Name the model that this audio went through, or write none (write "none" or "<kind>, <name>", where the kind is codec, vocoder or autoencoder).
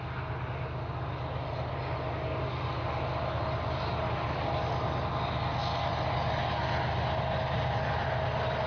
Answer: none